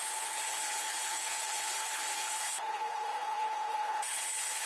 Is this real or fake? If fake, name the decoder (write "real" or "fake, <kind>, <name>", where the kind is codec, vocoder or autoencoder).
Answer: fake, codec, HILCodec